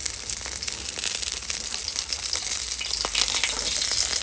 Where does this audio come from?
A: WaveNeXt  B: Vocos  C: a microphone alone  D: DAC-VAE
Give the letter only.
C